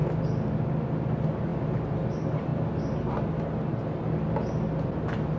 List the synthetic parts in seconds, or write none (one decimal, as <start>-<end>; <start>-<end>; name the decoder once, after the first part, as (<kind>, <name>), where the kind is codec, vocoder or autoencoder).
none